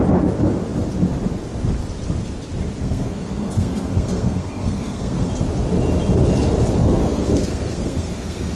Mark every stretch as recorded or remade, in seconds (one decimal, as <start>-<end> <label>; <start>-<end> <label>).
0.0-2.8 recorded; 2.8-5.3 remade; 5.3-6.8 recorded; 6.8-8.6 remade